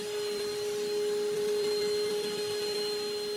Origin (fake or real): real